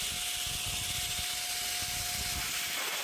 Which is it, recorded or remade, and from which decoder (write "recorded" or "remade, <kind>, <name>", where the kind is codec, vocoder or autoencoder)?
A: recorded